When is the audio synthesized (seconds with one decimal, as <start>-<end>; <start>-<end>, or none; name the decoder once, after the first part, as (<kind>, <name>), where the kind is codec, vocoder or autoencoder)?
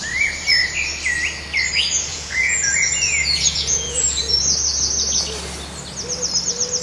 2.1-4.2 (vocoder, Vocos)